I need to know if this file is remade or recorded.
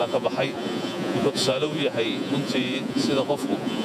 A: remade